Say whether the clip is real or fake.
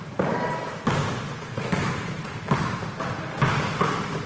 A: real